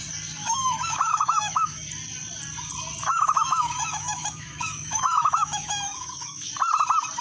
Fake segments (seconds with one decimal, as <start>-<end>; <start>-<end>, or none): 0.4-1.8; 3.1-6.5